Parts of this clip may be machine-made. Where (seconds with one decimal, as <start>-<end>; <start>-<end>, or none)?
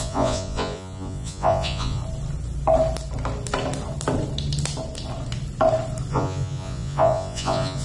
0.0-2.0; 6.1-7.8